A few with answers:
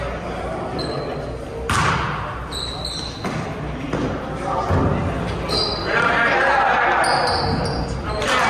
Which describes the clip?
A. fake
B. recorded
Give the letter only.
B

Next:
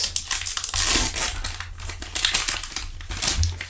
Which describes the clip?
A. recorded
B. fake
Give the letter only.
A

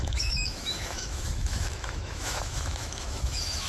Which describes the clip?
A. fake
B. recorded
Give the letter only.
A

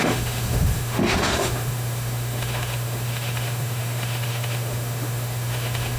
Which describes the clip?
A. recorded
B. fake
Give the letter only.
B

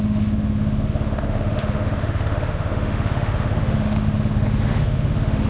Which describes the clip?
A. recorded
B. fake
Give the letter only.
B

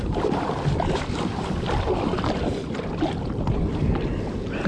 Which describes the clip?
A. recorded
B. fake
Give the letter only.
A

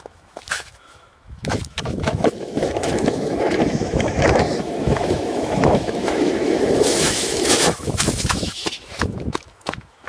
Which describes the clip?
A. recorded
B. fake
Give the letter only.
B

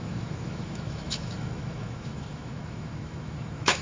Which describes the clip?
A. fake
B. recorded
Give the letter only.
A